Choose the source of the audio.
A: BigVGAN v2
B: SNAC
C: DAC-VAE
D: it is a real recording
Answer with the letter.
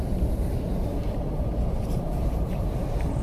A